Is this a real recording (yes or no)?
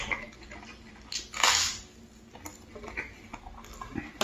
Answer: yes